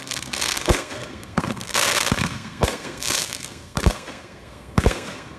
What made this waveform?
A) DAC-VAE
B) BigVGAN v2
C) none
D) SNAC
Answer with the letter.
D